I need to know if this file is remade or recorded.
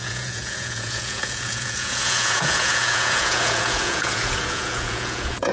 remade